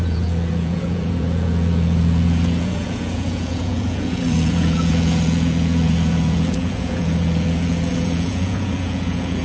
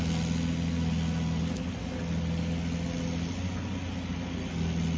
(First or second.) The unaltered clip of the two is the second